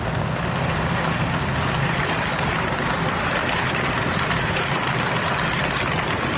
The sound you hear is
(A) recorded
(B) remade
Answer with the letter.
A